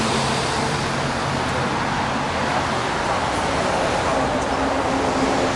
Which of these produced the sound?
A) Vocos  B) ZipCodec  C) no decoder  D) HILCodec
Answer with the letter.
C